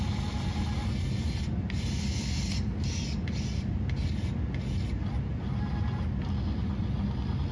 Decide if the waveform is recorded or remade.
recorded